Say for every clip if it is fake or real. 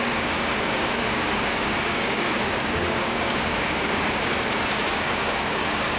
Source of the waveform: fake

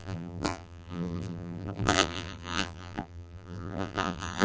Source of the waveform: fake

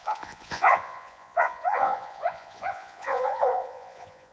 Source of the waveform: fake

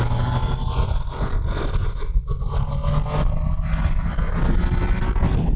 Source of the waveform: real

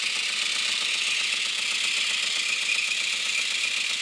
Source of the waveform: fake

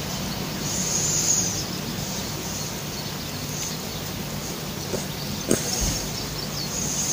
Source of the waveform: real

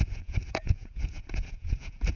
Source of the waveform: fake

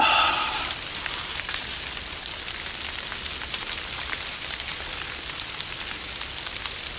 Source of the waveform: real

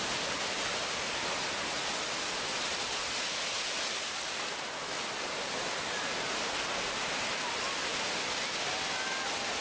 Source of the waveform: real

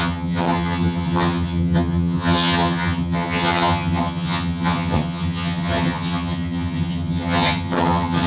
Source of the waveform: fake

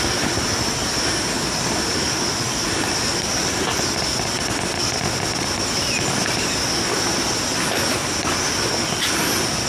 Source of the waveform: real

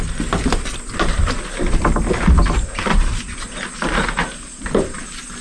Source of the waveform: real